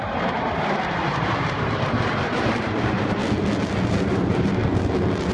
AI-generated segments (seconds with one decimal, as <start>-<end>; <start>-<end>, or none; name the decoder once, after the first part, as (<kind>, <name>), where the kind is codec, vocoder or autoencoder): 0.0-3.2 (vocoder, BigVGAN v2); 4.0-4.6